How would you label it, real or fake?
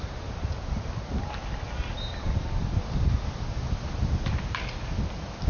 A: real